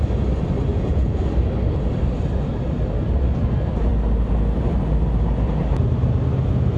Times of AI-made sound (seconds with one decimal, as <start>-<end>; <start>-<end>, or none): 0.7-1.2